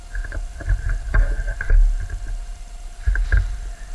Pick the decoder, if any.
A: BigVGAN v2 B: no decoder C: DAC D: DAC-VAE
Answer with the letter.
B